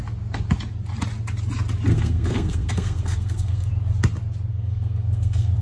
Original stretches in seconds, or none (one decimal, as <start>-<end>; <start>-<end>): 0.0-1.9; 3.7-4.5